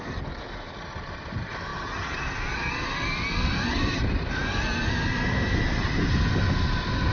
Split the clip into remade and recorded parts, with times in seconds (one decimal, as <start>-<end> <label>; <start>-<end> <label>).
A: 0.0-7.1 recorded

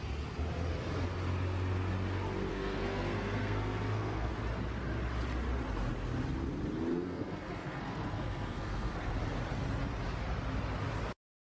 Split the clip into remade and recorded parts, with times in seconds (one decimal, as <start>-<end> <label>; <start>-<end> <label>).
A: 0.0-2.5 recorded; 2.5-4.3 remade; 4.3-6.9 recorded; 6.9-9.1 remade; 9.1-11.5 recorded

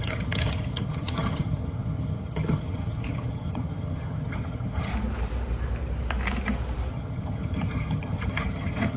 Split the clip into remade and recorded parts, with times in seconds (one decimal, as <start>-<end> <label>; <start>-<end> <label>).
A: 0.0-4.9 remade; 4.9-6.9 recorded; 6.9-9.0 remade

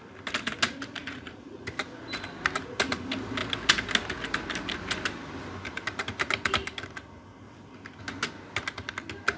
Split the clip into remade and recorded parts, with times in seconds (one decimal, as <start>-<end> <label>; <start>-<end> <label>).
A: 0.0-1.0 recorded; 1.0-1.6 remade; 1.6-9.4 recorded

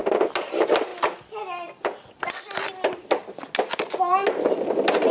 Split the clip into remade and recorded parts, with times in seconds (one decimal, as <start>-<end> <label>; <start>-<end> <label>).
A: 0.0-5.1 recorded